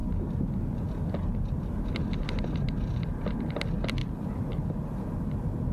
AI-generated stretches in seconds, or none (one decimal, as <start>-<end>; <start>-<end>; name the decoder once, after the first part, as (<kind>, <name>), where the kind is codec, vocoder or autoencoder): none